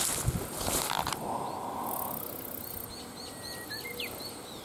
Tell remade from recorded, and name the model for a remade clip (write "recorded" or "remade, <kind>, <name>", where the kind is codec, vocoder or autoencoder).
recorded